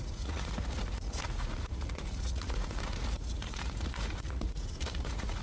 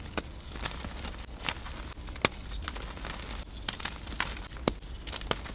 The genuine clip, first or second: second